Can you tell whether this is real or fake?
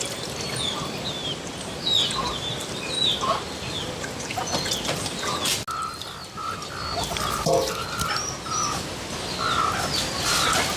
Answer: real